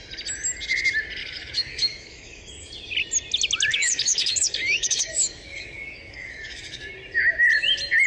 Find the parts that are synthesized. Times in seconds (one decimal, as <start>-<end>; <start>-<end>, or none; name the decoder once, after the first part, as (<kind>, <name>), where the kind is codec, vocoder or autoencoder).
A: 1.2-2.7 (codec, DAC); 3.7-6.9